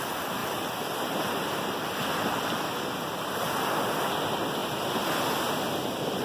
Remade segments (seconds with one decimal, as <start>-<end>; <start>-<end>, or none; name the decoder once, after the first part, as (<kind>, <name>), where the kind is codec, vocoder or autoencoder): 0.4-4.1 (vocoder, BigVGAN v2)